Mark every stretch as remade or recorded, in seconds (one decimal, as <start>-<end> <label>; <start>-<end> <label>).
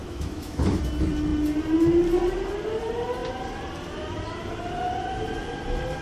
0.0-0.8 remade; 0.8-6.0 recorded